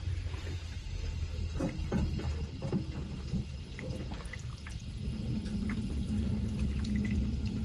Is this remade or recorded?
recorded